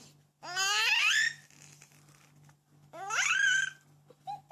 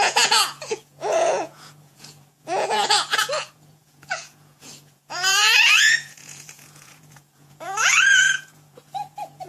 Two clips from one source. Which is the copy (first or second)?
second